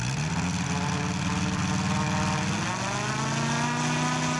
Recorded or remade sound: recorded